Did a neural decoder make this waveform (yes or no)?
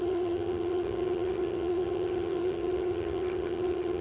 yes